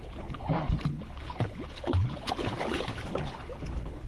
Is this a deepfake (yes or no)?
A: yes